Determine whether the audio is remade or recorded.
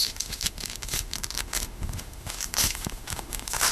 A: remade